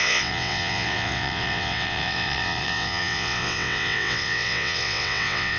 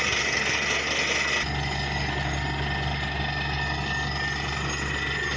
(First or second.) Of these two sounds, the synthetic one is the first